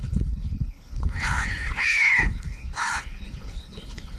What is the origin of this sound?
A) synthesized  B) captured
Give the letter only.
A